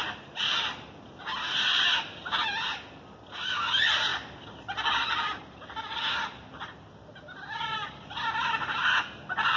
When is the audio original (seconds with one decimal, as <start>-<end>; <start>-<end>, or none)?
0.0-9.6